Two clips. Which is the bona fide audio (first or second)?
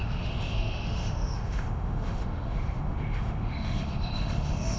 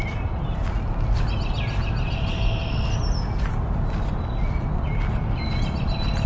second